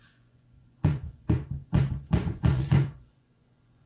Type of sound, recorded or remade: remade